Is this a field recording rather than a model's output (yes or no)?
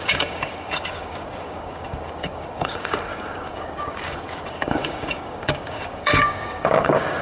no